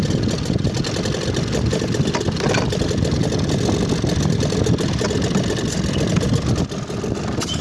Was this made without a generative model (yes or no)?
yes